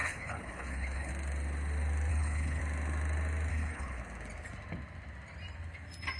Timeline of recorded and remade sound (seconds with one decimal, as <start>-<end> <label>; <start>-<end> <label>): 0.0-1.1 remade; 1.1-2.1 recorded; 2.1-2.6 remade; 2.6-3.5 recorded; 3.5-4.0 remade; 4.0-6.2 recorded